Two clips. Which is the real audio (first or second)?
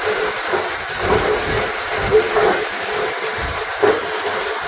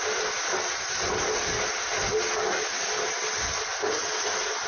second